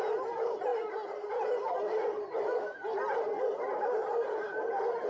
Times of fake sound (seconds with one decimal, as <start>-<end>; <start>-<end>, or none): none